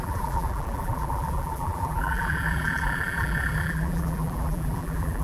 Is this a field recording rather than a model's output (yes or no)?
no